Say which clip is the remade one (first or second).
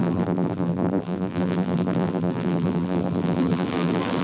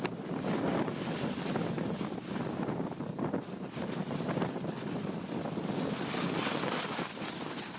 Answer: first